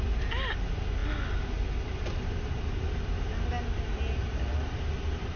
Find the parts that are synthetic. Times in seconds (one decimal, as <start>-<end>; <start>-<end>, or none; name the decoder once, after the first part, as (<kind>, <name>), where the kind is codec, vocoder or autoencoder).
none